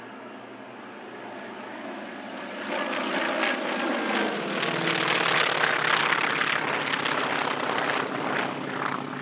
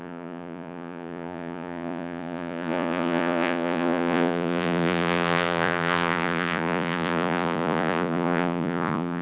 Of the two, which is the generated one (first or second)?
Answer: second